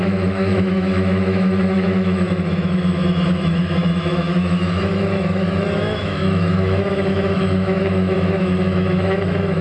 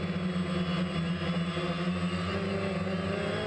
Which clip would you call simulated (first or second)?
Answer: first